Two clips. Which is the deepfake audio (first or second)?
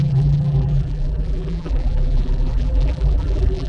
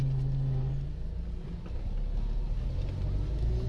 first